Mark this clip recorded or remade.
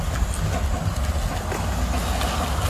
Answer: recorded